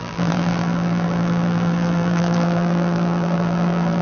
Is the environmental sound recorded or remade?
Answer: remade